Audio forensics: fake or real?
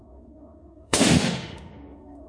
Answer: fake